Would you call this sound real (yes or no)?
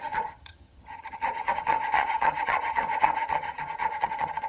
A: no